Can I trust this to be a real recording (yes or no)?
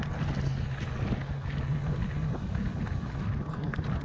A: yes